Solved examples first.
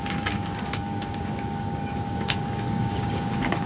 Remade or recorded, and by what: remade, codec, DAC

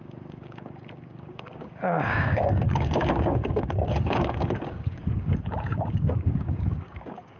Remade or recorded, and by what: remade, codec, DAC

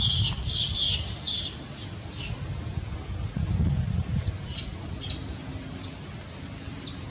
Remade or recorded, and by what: recorded